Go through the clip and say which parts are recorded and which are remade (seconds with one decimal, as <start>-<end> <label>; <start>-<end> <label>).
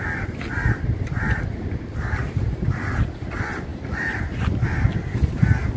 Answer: 0.0-2.4 remade; 2.4-3.7 recorded; 3.7-4.7 remade; 4.7-5.8 recorded